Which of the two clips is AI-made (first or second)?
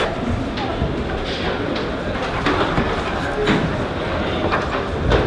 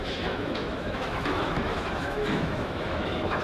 second